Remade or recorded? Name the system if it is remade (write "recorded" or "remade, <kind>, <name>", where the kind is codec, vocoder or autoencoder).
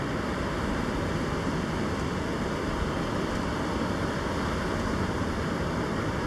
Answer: recorded